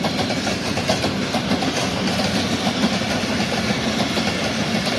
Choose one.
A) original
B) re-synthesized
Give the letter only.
A